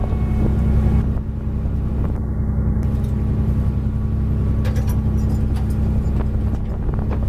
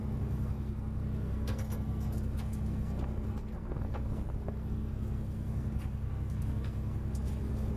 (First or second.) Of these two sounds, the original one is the first